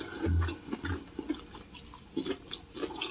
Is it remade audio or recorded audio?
recorded